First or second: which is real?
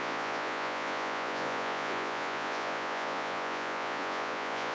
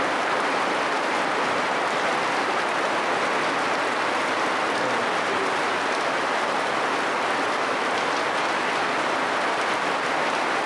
second